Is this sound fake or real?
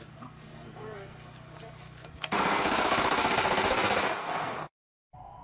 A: fake